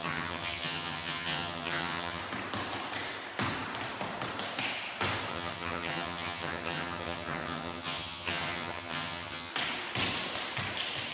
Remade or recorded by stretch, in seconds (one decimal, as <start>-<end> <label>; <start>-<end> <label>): 0.0-2.2 remade; 2.2-5.3 recorded; 5.3-9.5 remade; 9.5-11.1 recorded